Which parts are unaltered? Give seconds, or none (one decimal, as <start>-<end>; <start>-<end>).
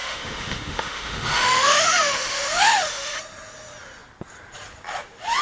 3.2-5.4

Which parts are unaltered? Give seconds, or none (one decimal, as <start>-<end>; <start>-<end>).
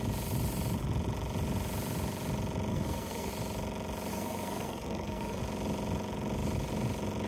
0.0-2.7; 3.3-4.1; 5.4-7.3